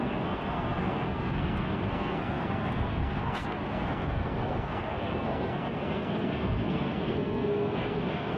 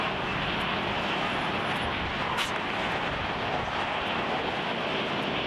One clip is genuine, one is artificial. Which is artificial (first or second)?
first